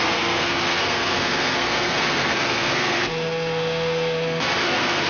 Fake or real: fake